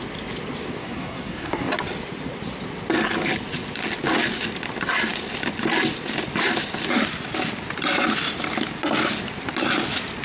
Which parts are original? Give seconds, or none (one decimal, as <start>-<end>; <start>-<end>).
0.0-0.8; 1.7-10.2